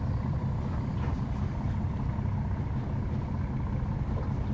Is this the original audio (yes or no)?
yes